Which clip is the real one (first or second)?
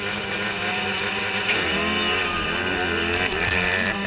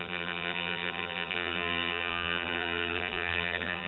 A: first